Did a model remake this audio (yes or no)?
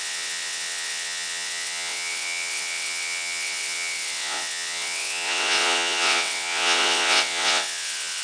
yes